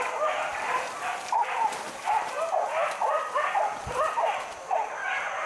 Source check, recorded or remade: recorded